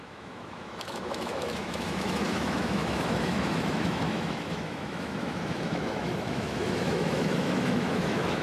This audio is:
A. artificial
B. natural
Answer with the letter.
A